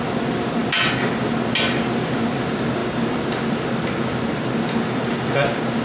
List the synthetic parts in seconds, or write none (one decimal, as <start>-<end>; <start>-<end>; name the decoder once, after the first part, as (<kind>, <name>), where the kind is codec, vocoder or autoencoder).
none